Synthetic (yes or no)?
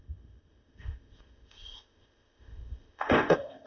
yes